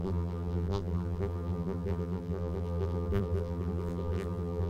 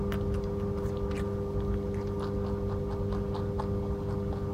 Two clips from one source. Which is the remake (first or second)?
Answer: first